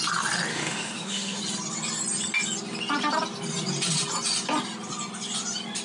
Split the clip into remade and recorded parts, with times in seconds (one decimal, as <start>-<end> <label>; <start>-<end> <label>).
0.0-0.5 recorded; 0.5-1.4 remade; 1.4-5.8 recorded